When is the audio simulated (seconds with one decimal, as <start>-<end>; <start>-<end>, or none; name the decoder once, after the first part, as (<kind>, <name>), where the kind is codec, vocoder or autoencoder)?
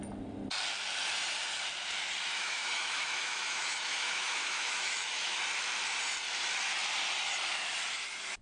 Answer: 2.3-5.4 (autoencoder, DAC-VAE)